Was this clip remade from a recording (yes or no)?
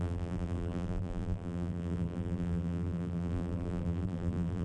yes